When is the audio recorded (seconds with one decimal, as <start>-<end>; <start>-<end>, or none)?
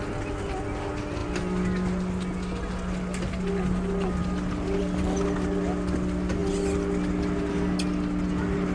0.0-8.7